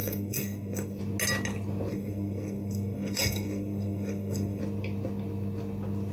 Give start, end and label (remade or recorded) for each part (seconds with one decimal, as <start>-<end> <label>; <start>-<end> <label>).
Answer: 0.0-1.0 remade; 1.0-1.9 recorded; 1.9-4.6 remade; 4.6-6.1 recorded